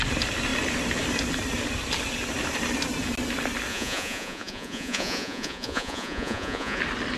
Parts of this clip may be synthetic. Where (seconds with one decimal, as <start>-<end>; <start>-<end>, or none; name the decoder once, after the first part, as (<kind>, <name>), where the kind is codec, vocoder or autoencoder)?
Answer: 3.7-6.8 (vocoder, Vocos)